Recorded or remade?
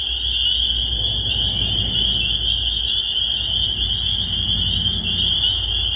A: recorded